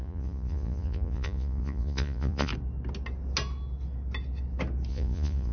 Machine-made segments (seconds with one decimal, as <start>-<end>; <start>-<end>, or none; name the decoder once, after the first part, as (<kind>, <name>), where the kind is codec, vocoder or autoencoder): 0.0-2.5 (vocoder, Vocos); 4.9-5.5